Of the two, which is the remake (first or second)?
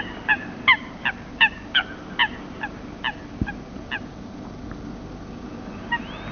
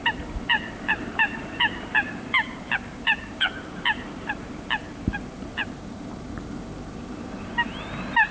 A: second